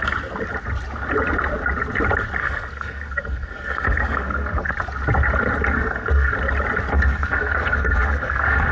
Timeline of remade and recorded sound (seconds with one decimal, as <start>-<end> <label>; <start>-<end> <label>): 0.0-2.4 recorded; 2.4-4.7 remade; 4.7-5.7 recorded; 5.7-6.3 remade; 6.3-6.9 recorded; 6.9-8.7 remade